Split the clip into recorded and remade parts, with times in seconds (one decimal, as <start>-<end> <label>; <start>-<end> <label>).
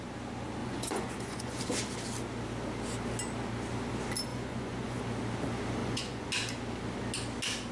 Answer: 0.0-0.6 recorded; 0.6-1.6 remade; 1.6-4.3 recorded; 4.3-5.0 remade; 5.0-5.8 recorded; 5.8-6.3 remade; 6.3-7.7 recorded